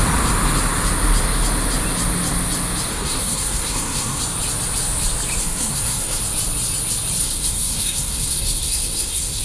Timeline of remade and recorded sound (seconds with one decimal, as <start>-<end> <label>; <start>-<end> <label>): 0.0-2.9 recorded; 2.9-4.2 remade; 4.2-5.4 recorded; 5.4-6.2 remade; 6.2-7.2 recorded; 7.2-9.4 remade